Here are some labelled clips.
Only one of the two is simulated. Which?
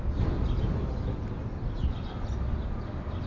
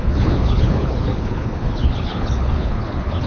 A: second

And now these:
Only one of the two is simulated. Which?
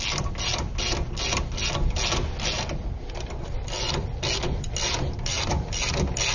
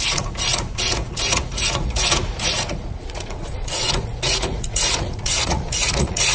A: second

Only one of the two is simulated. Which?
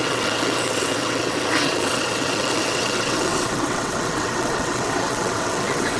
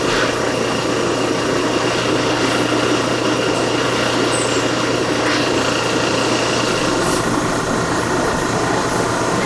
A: first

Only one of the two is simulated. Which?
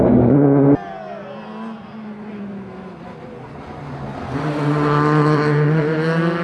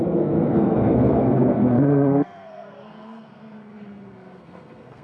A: second